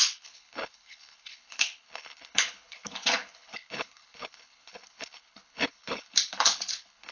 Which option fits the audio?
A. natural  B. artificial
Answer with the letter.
B